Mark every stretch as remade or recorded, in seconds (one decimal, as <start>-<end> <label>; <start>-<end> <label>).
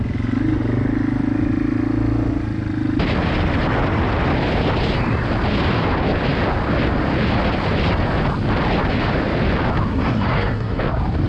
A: 0.0-9.9 recorded; 9.9-10.8 remade; 10.8-11.3 recorded